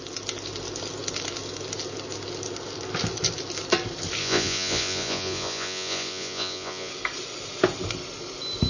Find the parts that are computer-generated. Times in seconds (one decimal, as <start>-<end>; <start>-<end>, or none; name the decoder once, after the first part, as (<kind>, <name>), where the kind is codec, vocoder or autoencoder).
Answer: 4.2-6.9 (vocoder, Vocos)